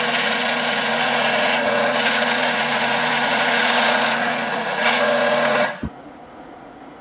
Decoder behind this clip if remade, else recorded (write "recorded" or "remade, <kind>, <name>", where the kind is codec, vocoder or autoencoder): remade, vocoder, Vocos